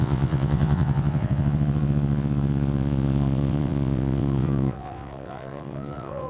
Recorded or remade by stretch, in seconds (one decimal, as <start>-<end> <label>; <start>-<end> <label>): 0.0-6.3 remade